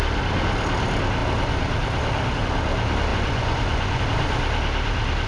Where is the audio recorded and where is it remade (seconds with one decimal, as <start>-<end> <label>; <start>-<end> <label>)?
0.0-3.1 recorded; 3.1-4.0 remade; 4.0-5.3 recorded